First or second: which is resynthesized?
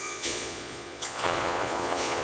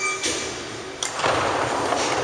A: first